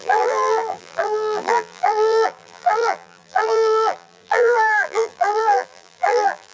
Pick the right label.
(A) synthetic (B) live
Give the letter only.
A